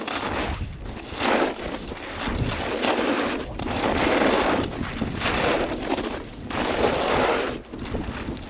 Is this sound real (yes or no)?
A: yes